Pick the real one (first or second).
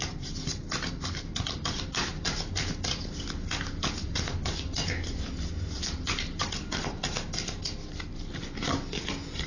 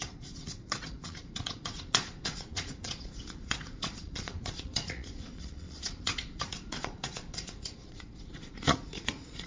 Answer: first